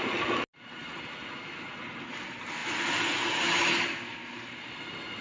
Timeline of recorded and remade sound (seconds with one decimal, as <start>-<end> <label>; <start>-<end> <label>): 0.0-5.2 recorded